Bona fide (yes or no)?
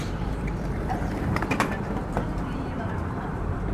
no